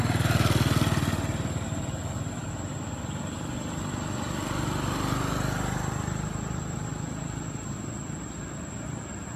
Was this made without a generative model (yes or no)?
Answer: yes